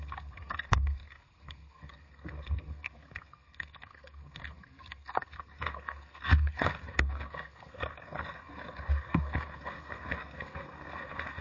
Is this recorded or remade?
remade